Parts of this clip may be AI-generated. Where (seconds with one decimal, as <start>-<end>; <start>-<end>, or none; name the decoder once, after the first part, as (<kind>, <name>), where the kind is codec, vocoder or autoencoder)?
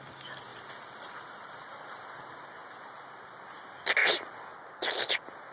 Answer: none